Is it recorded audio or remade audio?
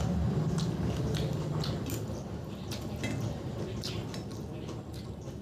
recorded